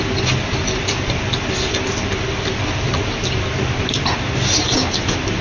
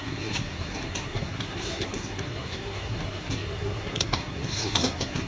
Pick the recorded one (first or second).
first